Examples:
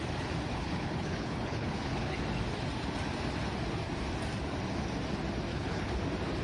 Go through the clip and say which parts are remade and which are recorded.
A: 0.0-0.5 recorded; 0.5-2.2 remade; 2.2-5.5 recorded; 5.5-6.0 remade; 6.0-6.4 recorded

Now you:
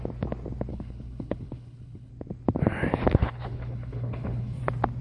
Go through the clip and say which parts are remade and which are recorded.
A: 0.0-0.7 recorded; 0.7-2.1 remade; 2.1-3.2 recorded; 3.2-4.6 remade; 4.6-5.0 recorded

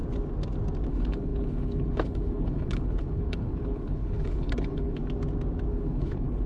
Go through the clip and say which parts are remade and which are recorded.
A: 0.0-0.9 recorded; 0.9-5.0 remade; 5.0-5.7 recorded; 5.7-6.5 remade

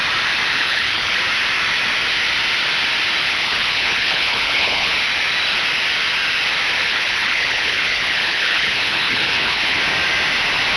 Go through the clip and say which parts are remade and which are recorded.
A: 0.0-0.5 recorded; 0.5-1.2 remade; 1.2-3.2 recorded; 3.2-4.9 remade; 4.9-6.8 recorded; 6.8-9.8 remade; 9.8-10.8 recorded

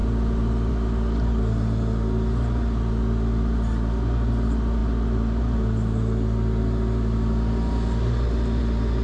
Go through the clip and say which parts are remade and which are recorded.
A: 0.0-9.0 recorded

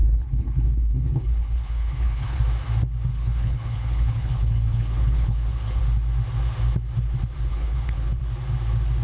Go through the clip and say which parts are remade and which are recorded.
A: 0.0-2.4 remade; 2.4-3.1 recorded; 3.1-5.8 remade; 5.8-7.5 recorded; 7.5-8.2 remade; 8.2-9.0 recorded

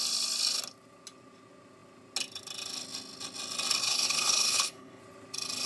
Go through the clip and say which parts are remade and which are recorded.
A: 0.0-3.8 recorded; 3.8-5.0 remade; 5.0-5.7 recorded